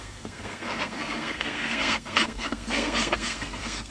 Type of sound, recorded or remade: remade